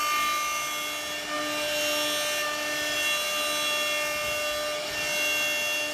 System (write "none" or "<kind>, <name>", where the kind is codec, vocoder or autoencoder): none